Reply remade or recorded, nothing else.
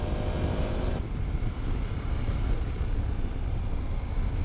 recorded